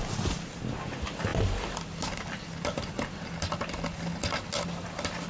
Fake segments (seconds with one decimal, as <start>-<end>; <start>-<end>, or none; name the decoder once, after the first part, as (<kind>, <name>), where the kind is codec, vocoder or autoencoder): none